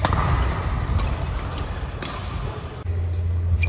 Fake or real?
real